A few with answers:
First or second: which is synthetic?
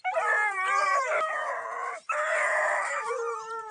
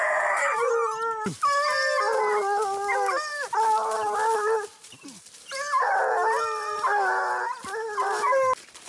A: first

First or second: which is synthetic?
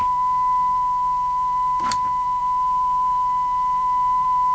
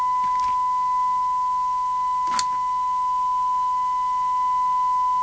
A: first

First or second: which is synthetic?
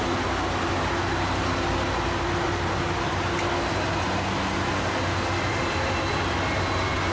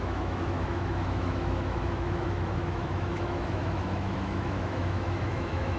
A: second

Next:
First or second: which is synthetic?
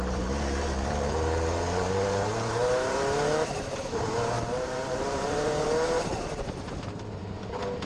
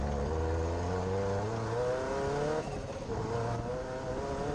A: first